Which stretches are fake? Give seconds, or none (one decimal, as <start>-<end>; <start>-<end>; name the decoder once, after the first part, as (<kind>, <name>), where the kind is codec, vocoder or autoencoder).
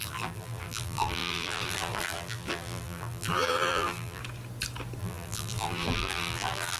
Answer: 0.0-4.2 (vocoder, BigVGAN v2); 5.0-6.8